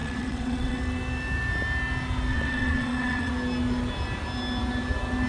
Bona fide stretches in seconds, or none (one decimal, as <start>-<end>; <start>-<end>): 0.8-2.3; 3.3-5.3